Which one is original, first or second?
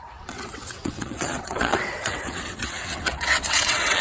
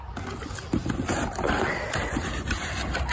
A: second